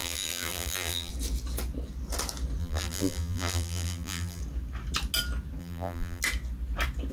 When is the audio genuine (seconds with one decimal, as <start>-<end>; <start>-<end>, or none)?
1.1-2.6; 4.4-5.6; 6.2-7.1